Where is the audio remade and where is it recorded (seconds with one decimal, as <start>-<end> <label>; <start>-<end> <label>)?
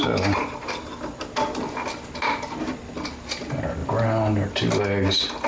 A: 0.0-5.5 recorded